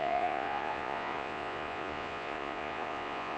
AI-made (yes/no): yes